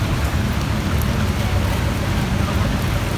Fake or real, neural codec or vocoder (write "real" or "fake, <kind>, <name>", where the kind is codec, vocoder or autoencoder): real